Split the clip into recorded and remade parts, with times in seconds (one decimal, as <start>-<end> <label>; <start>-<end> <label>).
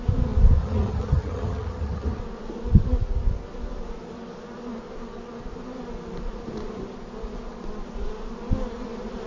0.0-0.6 recorded; 0.6-2.2 remade; 2.2-9.3 recorded